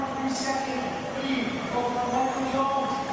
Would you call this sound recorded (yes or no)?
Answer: yes